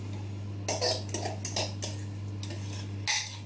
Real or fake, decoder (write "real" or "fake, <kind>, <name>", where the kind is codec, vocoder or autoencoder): real